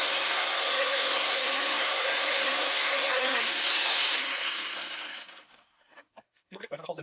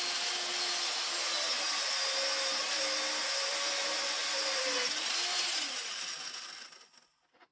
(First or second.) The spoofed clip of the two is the first